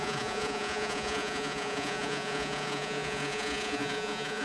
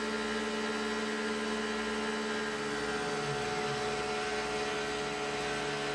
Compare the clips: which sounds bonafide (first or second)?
second